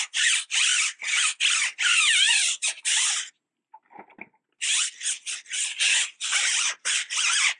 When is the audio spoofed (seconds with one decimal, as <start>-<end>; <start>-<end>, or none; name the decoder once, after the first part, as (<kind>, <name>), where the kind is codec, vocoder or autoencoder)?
none